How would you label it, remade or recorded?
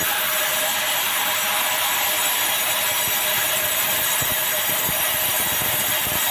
remade